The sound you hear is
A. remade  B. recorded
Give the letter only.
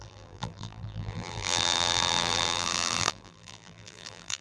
A